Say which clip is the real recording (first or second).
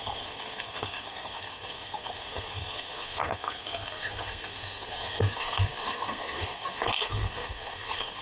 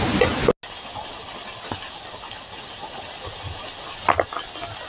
second